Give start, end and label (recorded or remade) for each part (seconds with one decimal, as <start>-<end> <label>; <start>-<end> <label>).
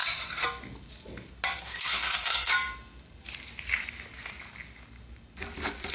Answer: 0.0-1.6 recorded; 1.6-2.5 remade; 2.5-5.9 recorded